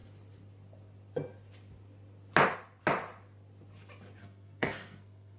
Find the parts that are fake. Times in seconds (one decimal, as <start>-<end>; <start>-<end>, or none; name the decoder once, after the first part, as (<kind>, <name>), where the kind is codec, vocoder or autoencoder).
4.2-5.4 (codec, SNAC)